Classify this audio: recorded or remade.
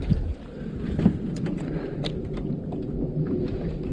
recorded